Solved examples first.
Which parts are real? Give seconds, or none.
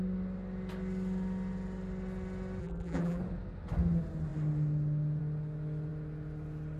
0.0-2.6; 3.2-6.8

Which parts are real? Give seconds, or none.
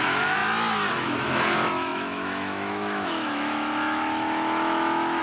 0.4-0.9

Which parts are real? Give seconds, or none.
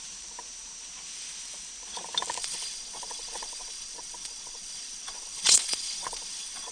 0.0-2.4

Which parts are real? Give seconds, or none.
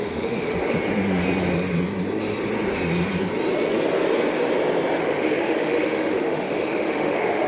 0.5-5.0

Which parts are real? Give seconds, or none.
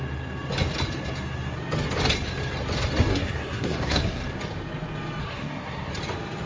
0.0-3.1; 4.2-5.2; 5.9-6.5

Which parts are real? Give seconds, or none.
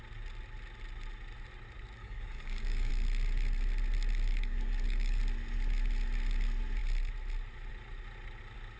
0.0-2.0; 2.9-4.3; 5.2-8.8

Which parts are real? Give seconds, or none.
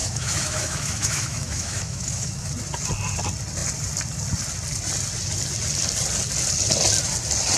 2.5-7.6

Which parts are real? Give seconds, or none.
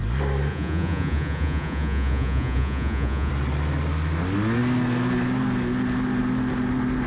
0.0-0.5; 3.3-7.1